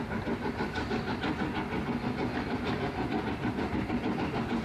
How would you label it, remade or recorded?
recorded